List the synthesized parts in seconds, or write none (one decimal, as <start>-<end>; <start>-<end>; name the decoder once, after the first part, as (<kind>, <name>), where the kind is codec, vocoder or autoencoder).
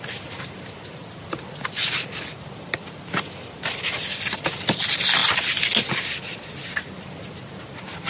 none